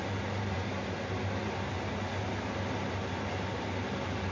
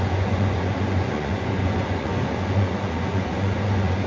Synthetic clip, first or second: second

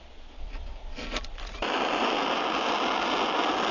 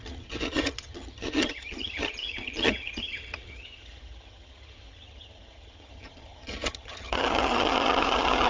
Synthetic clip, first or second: second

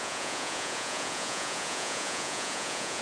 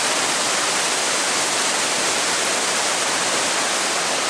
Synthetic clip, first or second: first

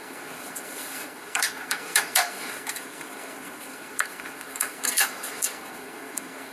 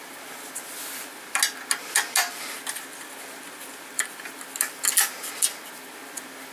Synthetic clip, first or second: first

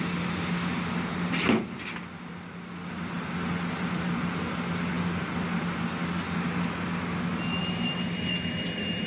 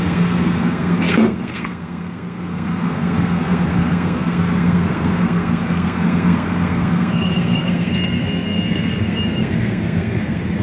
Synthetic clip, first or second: second